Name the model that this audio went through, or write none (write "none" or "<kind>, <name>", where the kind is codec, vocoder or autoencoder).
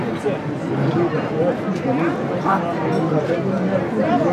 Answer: none